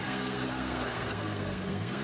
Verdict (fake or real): fake